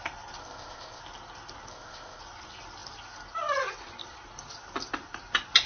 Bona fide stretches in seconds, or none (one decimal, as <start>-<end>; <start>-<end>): 0.0-0.4; 1.0-1.7; 2.2-5.7